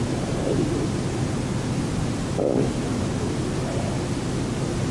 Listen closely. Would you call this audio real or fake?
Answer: real